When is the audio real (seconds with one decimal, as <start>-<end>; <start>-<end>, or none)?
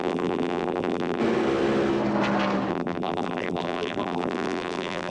1.2-2.7